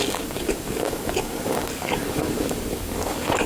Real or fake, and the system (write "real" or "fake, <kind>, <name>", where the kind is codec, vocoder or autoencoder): fake, codec, DAC